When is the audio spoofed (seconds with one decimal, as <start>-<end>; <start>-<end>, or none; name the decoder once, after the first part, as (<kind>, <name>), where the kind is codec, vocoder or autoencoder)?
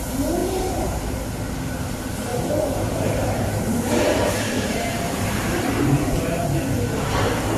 0.4-1.2 (vocoder, BigVGAN v2); 2.3-5.8